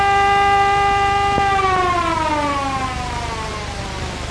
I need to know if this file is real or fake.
real